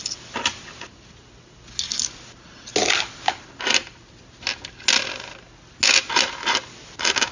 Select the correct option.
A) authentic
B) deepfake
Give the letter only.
A